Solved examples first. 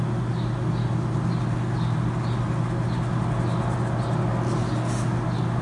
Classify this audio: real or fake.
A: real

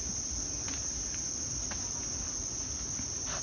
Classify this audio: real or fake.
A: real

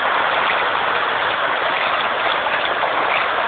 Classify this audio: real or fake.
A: real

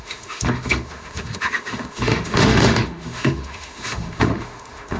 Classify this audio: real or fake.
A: fake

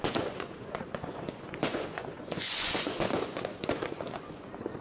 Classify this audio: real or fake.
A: fake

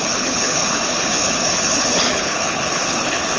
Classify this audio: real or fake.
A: fake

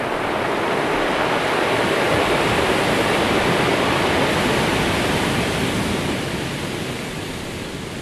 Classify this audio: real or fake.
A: real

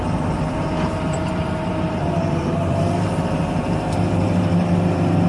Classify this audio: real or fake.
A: fake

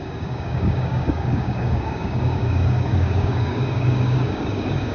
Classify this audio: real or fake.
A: fake